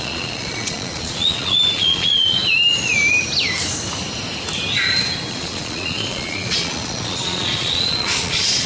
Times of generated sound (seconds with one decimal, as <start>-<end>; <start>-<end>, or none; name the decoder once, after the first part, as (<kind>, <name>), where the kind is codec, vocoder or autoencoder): 0.0-2.4 (vocoder, Vocos); 5.3-8.7

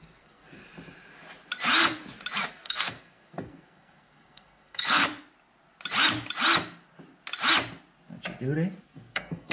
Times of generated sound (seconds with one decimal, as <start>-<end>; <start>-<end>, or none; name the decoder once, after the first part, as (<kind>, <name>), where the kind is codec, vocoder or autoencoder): 0.0-0.6 (codec, SNAC); 2.5-5.0; 8.8-9.5

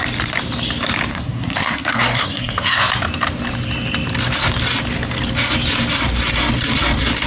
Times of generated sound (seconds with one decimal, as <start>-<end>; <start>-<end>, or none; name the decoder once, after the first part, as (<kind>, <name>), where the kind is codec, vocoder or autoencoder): 1.1-2.9 (codec, SNAC)

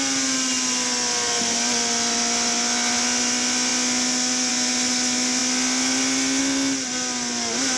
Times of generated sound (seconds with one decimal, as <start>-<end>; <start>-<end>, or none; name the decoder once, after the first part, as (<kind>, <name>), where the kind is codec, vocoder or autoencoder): none